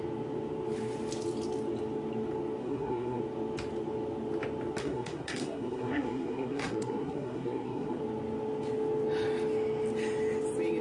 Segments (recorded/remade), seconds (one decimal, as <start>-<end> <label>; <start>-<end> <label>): 0.0-2.6 recorded; 2.6-3.2 remade; 3.2-4.8 recorded; 4.8-8.0 remade; 8.0-10.8 recorded